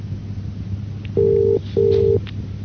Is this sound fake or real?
real